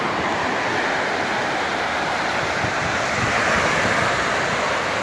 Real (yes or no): yes